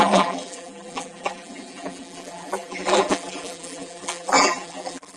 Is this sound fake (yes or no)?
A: yes